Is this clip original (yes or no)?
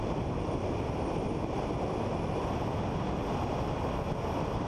yes